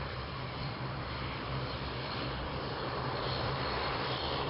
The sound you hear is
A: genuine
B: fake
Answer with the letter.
B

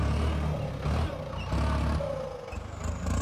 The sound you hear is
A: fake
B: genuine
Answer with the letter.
B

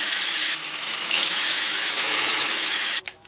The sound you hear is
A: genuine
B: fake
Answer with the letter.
B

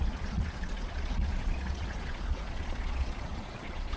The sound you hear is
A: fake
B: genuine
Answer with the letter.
A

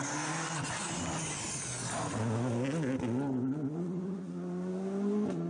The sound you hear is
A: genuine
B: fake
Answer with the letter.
A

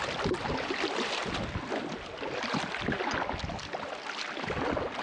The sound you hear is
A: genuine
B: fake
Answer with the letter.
A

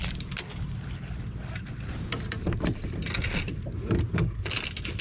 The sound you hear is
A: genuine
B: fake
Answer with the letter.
A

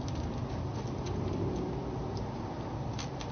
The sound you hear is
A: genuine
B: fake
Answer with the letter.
A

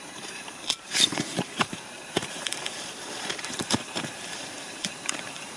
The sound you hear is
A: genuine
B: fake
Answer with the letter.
B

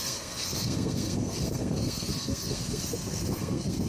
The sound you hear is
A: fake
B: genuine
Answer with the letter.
A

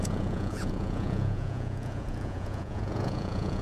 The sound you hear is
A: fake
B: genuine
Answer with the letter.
A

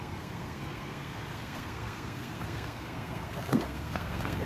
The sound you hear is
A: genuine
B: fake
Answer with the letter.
B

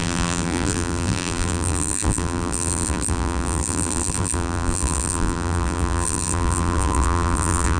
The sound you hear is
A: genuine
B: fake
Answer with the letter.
B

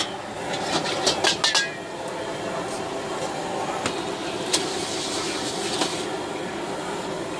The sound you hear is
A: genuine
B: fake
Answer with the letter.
A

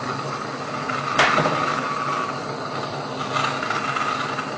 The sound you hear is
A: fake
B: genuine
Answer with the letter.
B